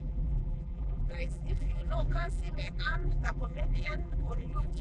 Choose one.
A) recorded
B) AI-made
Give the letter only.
B